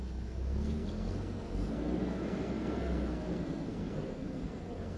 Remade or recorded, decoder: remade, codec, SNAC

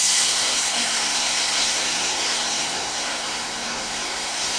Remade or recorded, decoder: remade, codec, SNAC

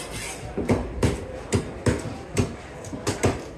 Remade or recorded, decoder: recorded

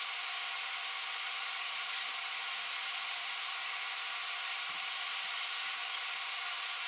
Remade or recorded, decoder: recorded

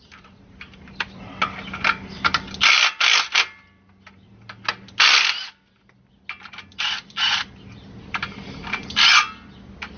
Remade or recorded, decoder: recorded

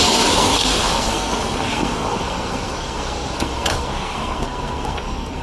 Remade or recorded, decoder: remade, codec, SNAC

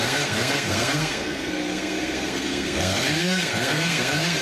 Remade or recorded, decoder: remade, codec, SNAC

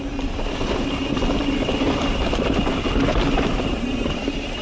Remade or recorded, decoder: recorded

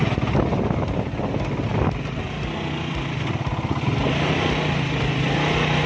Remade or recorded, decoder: recorded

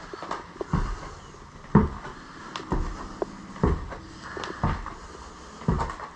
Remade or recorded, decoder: recorded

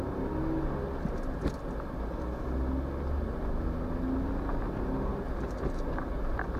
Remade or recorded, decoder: recorded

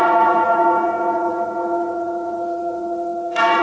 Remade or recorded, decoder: remade, vocoder, WaveNeXt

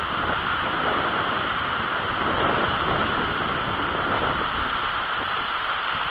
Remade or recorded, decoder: recorded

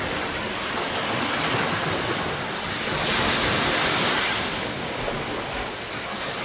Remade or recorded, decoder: recorded